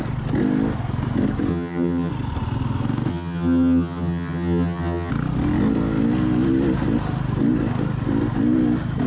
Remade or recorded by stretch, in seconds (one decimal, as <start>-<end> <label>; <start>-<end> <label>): 0.0-1.5 recorded; 1.5-2.1 remade; 2.1-3.1 recorded; 3.1-5.1 remade; 5.1-9.1 recorded